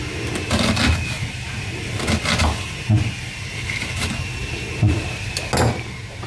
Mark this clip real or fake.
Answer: real